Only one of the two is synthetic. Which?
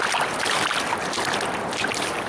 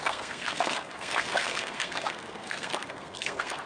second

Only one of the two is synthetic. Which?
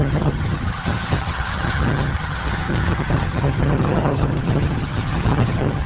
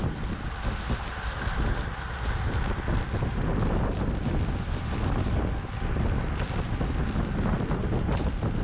first